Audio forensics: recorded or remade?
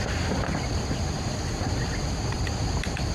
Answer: recorded